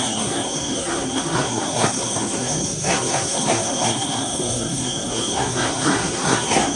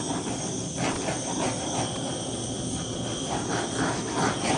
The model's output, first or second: first